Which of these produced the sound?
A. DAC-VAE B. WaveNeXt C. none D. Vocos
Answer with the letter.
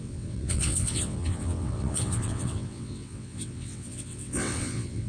B